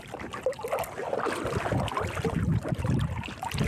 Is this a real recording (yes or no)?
yes